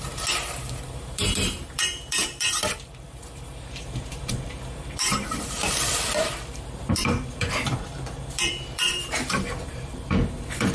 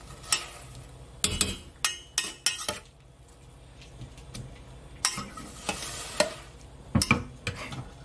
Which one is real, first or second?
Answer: second